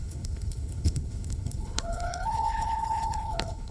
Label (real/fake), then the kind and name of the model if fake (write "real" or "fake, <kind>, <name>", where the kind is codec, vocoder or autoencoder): fake, codec, HILCodec